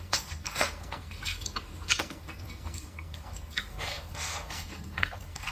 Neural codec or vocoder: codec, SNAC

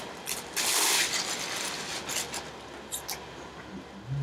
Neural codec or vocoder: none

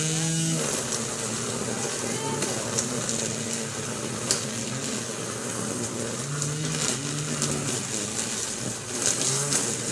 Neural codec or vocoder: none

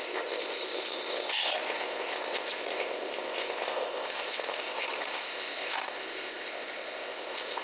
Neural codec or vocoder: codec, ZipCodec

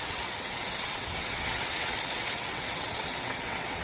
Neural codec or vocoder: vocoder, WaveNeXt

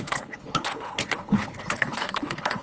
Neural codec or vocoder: codec, HILCodec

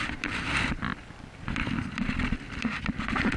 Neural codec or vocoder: vocoder, BigVGAN v2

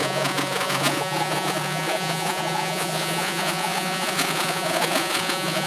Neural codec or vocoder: vocoder, Vocos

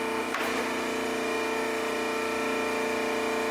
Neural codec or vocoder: none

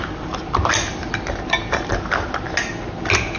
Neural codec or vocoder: none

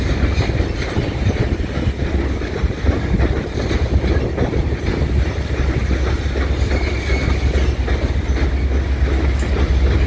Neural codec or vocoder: none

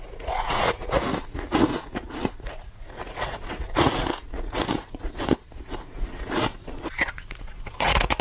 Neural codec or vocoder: vocoder, Vocos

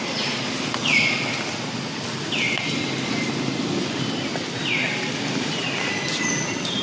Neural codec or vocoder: none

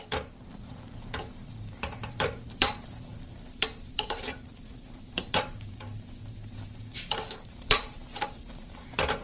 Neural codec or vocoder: vocoder, BigVGAN v2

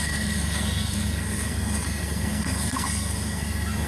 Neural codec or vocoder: codec, SNAC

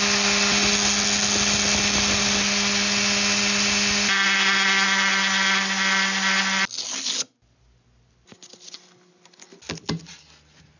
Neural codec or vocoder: none